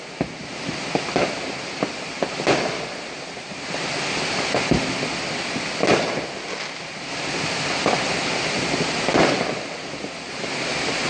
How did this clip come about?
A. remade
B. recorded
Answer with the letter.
B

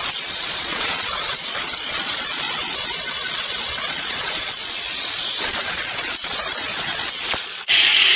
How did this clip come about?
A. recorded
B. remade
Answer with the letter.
B